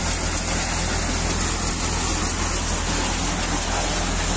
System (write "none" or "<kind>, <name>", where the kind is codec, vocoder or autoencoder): none